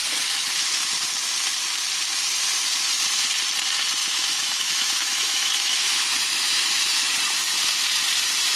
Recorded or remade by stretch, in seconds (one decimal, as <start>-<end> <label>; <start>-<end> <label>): 0.0-4.0 recorded; 4.0-7.1 remade; 7.1-8.6 recorded